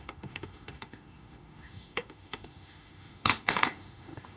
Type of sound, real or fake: fake